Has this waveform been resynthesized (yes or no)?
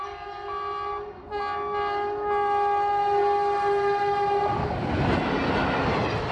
no